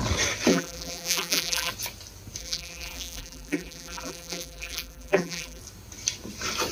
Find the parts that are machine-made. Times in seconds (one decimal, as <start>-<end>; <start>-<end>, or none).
0.5-1.7; 2.4-5.6